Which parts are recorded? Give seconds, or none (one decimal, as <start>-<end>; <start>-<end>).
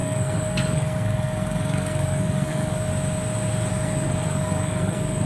2.9-3.7